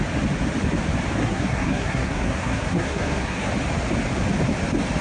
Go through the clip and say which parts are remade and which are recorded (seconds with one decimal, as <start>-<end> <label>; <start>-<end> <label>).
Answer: 0.0-1.2 recorded; 1.2-3.5 remade; 3.5-5.0 recorded